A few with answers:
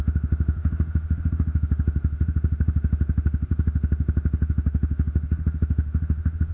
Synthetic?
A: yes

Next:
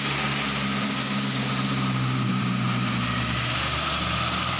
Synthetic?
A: no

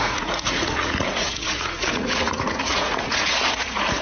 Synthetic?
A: yes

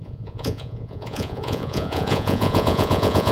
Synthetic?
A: yes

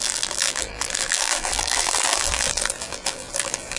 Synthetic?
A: yes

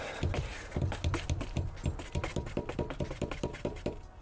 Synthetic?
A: no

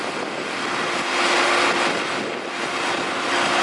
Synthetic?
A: no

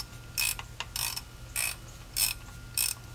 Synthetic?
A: no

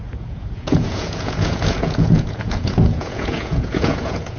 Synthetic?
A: yes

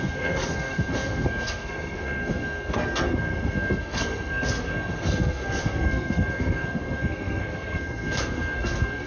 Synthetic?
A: yes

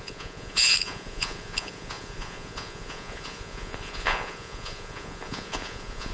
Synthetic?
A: yes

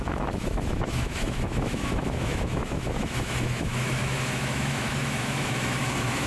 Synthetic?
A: yes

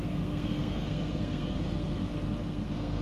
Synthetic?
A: yes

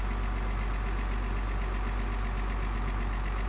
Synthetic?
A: no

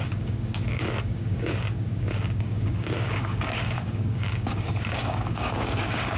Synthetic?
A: yes